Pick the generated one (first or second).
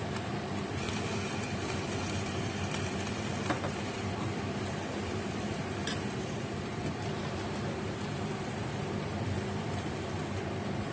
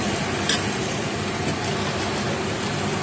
first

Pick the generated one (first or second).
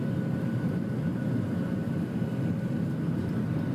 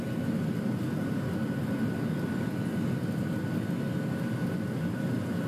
first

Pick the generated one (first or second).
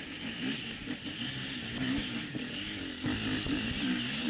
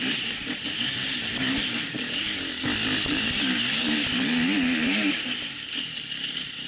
second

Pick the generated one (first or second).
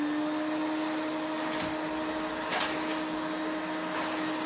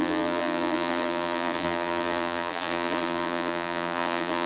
second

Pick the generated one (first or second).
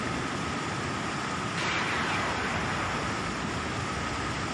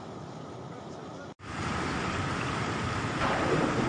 second